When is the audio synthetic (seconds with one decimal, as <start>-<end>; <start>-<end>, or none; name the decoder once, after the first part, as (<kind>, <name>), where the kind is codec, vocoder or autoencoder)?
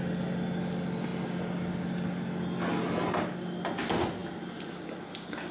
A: none